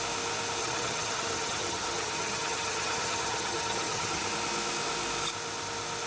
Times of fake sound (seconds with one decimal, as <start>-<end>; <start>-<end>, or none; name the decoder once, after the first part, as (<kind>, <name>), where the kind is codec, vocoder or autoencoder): 0.6-4.3 (vocoder, HiFi-GAN)

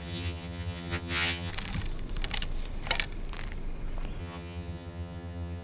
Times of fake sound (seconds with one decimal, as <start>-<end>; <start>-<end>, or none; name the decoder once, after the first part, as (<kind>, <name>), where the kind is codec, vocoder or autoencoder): 0.0-1.5 (vocoder, HiFi-GAN); 4.2-5.6

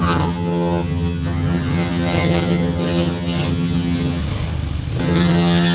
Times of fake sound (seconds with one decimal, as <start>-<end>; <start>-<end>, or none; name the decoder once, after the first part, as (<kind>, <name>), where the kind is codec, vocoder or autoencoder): 0.0-4.2 (vocoder, HiFi-GAN); 5.0-5.7

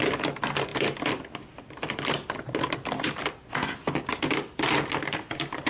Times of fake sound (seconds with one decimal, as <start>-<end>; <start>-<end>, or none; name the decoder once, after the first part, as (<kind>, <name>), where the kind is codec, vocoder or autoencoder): none